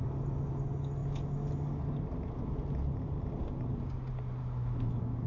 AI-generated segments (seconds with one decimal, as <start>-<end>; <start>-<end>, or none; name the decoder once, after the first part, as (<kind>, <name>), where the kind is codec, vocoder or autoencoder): 4.4-5.3 (autoencoder, DAC-VAE)